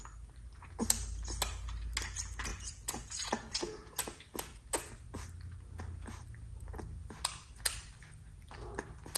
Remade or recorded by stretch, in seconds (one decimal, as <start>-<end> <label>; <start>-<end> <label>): 0.0-2.5 recorded; 2.5-4.6 remade; 4.6-9.2 recorded